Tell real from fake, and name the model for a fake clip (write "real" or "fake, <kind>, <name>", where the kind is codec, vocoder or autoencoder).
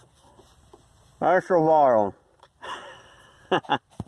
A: real